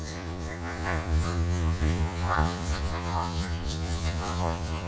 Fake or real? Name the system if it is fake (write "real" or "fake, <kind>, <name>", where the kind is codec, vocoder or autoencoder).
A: fake, vocoder, Vocos